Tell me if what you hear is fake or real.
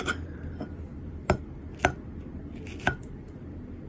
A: real